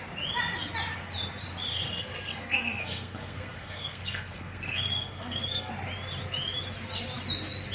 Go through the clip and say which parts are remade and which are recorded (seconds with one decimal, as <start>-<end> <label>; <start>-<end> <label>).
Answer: 0.0-1.7 recorded; 1.7-5.7 remade; 5.7-7.7 recorded